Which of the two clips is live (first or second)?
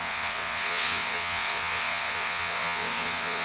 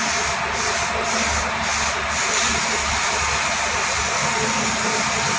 second